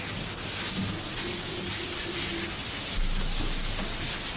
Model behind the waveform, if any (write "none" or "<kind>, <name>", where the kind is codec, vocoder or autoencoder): none